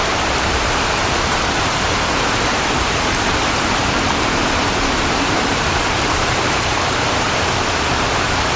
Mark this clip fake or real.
fake